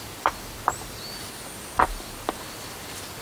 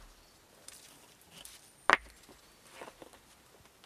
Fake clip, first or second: first